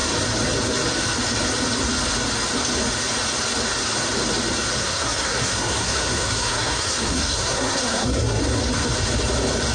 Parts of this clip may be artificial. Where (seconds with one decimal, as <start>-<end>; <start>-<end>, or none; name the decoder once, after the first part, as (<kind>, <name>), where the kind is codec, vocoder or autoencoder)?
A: 4.8-8.4 (codec, SNAC)